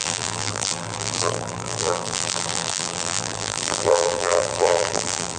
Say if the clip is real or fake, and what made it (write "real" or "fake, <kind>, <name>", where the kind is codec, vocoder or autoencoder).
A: fake, vocoder, BigVGAN v2